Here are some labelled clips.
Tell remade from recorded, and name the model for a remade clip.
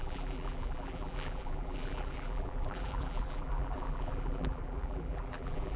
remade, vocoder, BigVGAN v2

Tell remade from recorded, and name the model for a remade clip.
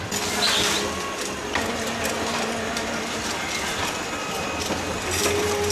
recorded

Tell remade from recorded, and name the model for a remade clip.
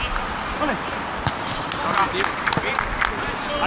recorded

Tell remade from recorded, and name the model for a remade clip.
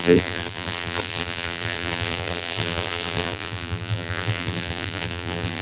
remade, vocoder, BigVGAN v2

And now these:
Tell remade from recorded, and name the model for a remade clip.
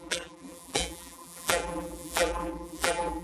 remade, vocoder, BigVGAN v2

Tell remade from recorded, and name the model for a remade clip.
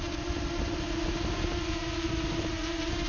remade, vocoder, BigVGAN v2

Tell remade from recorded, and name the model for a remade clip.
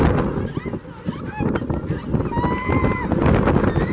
recorded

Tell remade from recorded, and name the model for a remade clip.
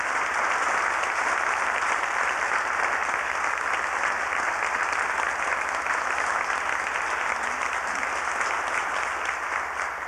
recorded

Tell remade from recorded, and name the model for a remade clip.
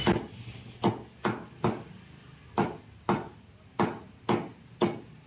recorded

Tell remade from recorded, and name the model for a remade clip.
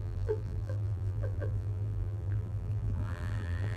remade, vocoder, BigVGAN v2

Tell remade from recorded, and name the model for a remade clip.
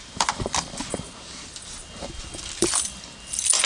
remade, vocoder, BigVGAN v2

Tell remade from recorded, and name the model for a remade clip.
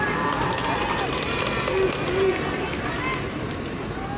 recorded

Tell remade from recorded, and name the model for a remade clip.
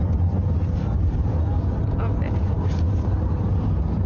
recorded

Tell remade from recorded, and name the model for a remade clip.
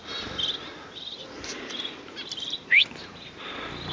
recorded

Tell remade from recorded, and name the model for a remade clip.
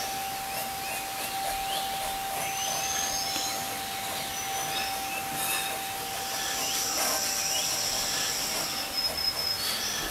recorded